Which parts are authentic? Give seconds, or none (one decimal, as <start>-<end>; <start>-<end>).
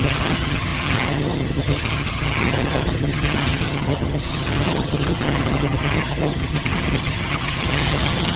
none